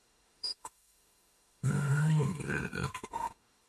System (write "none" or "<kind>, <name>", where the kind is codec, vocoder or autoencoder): autoencoder, DAC-VAE